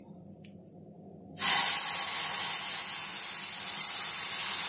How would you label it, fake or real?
real